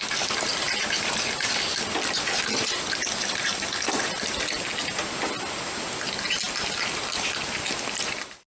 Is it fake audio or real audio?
real